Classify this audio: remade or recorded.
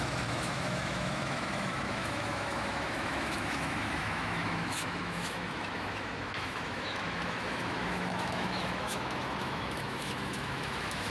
remade